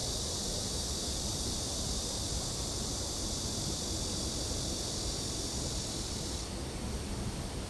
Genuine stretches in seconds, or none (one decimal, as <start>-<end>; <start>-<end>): 0.0-7.7